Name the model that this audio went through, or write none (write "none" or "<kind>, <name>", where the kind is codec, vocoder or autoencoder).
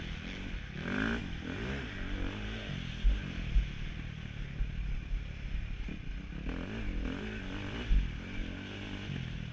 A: none